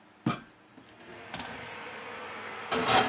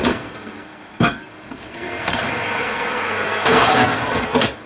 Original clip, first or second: first